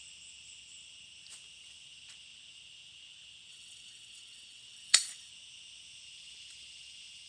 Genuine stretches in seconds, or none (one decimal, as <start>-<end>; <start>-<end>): 0.0-3.5; 5.3-7.3